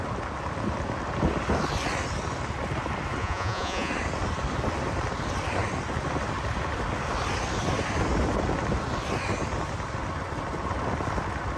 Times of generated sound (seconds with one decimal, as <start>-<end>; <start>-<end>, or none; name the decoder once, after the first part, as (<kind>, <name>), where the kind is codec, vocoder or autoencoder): 3.2-3.9 (vocoder, Vocos)